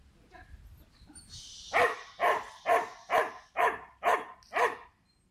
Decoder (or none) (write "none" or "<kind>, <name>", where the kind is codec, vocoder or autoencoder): none